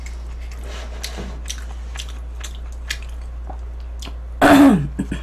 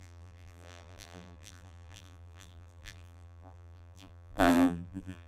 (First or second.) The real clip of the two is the first